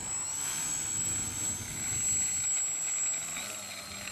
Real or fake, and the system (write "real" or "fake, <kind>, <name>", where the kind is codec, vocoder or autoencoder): real